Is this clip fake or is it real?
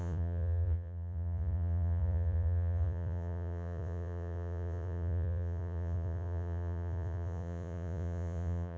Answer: fake